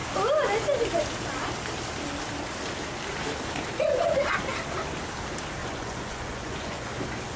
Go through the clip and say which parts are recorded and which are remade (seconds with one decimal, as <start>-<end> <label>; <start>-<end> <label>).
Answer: 0.0-5.6 recorded; 5.6-6.9 remade; 6.9-7.4 recorded